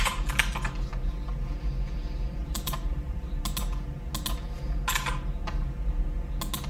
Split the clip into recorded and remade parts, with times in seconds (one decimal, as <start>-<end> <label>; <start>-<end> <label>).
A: 0.0-2.4 recorded; 2.4-3.4 remade; 3.4-6.7 recorded